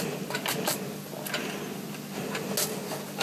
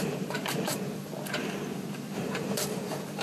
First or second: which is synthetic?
second